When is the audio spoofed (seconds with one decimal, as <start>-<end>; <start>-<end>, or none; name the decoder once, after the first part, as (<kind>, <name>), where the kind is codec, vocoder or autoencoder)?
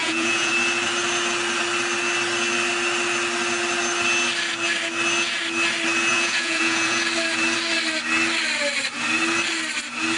0.0-0.5 (vocoder, Vocos); 6.1-7.0